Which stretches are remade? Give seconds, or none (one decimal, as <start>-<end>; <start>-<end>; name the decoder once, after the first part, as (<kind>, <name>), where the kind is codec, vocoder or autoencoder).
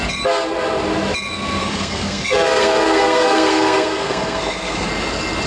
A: 1.6-4.9 (codec, SNAC)